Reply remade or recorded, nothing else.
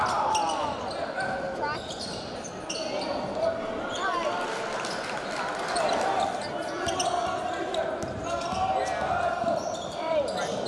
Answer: recorded